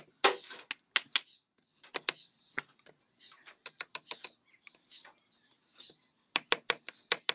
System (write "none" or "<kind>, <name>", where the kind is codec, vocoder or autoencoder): none